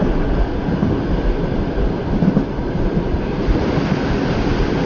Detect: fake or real real